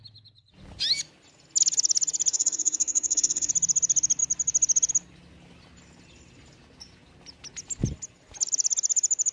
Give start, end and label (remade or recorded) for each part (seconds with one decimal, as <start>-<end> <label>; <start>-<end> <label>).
0.0-2.3 recorded; 2.3-3.5 remade; 3.5-9.3 recorded